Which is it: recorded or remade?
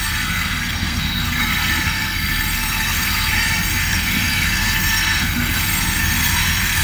remade